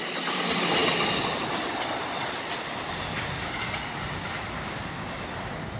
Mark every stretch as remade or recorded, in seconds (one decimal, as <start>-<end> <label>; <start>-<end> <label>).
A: 0.0-5.8 recorded